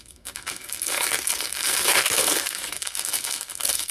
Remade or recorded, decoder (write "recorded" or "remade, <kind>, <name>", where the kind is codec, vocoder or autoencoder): remade, codec, SNAC